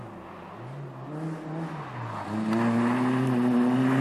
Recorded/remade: recorded